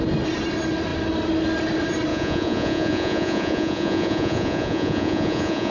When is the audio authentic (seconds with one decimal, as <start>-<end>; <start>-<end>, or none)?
0.0-2.1